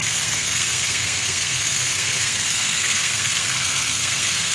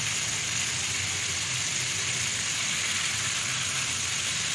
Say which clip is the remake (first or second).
first